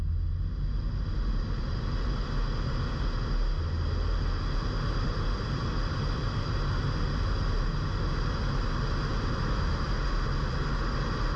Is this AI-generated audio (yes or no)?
no